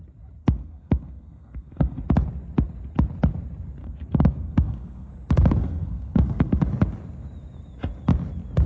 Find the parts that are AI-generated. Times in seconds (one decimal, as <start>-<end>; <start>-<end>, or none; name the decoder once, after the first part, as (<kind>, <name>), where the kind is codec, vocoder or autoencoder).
0.4-2.0 (codec, SNAC); 3.8-5.1; 5.6-6.6